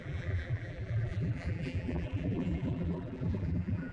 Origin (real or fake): fake